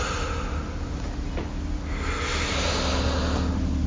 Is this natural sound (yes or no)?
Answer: yes